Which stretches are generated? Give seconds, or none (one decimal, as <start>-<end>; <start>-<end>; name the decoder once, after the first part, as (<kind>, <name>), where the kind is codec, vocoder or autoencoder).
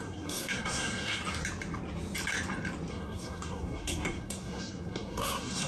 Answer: 0.0-1.2 (codec, SNAC); 2.9-5.7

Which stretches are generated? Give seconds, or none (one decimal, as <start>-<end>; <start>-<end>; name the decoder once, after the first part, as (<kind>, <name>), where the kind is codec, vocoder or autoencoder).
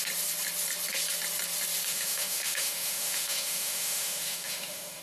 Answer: 1.9-5.0 (autoencoder, DAC-VAE)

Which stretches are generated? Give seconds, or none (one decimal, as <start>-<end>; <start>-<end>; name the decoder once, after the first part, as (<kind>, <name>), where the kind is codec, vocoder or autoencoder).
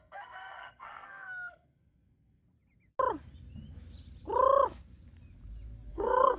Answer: 0.0-2.4 (codec, SNAC); 5.9-6.4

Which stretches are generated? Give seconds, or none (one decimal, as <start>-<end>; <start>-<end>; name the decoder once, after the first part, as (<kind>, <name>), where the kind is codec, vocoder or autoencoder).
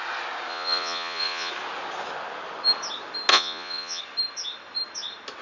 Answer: 0.5-1.5 (vocoder, Vocos); 3.3-4.0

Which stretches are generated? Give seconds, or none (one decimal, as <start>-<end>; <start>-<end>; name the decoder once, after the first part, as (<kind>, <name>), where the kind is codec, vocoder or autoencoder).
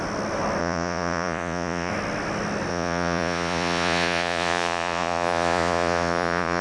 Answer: 0.6-1.9 (vocoder, Vocos); 2.7-6.6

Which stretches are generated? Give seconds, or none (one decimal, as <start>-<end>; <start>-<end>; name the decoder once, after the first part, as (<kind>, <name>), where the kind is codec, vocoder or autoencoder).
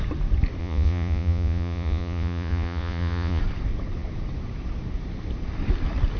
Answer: 0.6-3.4 (vocoder, Vocos)